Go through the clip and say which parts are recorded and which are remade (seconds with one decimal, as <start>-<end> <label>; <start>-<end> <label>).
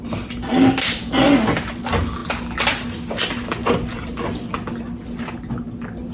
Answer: 0.0-6.1 recorded